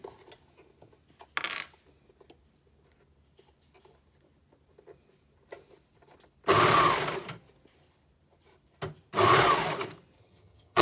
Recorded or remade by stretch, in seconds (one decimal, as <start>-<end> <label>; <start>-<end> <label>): 0.0-10.2 recorded; 10.2-10.8 remade

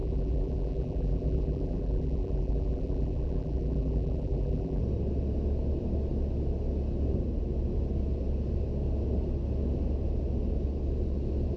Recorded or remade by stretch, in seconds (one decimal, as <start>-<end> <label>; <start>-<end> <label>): 0.0-4.8 remade; 4.8-11.6 recorded

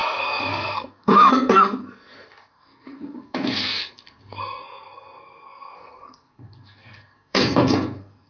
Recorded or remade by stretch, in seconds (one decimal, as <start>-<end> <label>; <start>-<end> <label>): 0.0-8.3 remade

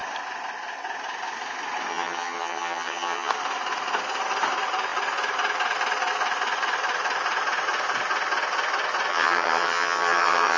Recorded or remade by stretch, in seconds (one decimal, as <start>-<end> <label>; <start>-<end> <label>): 0.0-1.9 recorded; 1.9-3.3 remade; 3.3-9.1 recorded; 9.1-10.6 remade